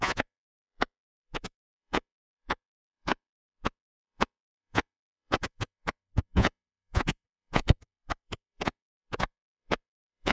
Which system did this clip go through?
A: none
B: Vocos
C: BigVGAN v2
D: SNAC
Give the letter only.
B